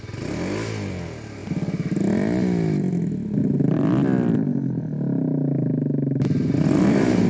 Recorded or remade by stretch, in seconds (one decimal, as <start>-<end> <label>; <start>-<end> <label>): 0.0-7.3 recorded